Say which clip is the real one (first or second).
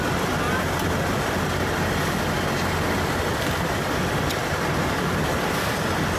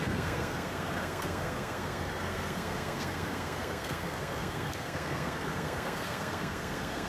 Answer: first